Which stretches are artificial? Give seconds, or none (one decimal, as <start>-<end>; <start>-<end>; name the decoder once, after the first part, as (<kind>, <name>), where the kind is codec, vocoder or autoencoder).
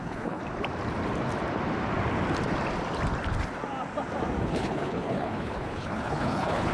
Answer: 0.0-0.4 (codec, HILCodec); 4.4-6.7